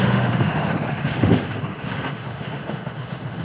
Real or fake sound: fake